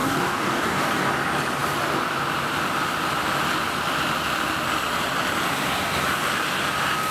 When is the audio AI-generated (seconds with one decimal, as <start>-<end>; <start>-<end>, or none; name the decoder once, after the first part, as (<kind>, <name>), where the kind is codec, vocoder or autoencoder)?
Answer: 0.0-1.1 (codec, DAC)